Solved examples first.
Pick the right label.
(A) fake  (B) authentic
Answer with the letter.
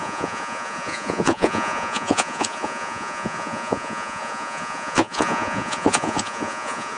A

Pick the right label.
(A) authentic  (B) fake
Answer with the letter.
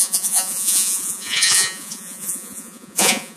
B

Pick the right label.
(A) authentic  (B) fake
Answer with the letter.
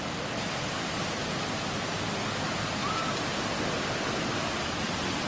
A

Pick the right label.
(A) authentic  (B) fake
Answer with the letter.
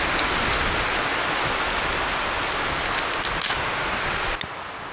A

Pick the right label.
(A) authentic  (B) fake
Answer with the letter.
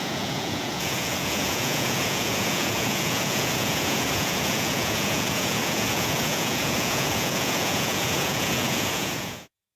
B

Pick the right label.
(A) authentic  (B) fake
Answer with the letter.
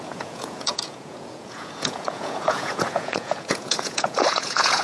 B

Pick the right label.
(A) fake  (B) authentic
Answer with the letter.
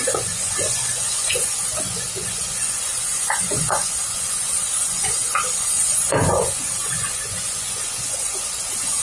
A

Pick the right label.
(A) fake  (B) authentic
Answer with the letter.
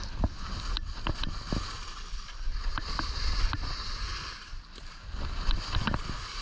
B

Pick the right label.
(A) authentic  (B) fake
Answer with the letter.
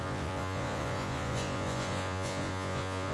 B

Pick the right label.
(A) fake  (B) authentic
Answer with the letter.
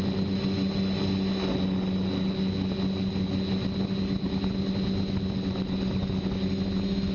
B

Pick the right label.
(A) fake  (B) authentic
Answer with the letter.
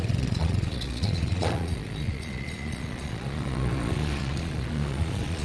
A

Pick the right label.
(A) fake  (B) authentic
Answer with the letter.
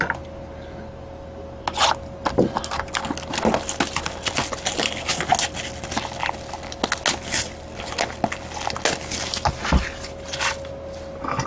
B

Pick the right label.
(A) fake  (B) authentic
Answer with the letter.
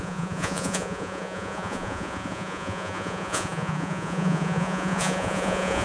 A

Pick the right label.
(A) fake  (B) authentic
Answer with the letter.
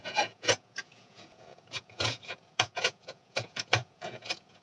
A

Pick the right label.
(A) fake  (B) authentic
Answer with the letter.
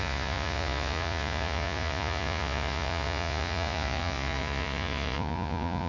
A